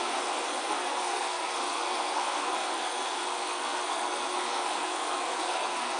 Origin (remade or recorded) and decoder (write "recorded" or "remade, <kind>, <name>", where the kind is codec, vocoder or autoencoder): remade, codec, SNAC